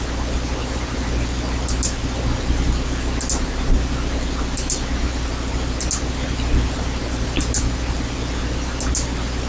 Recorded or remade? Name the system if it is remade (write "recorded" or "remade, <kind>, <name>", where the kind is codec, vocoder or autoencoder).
recorded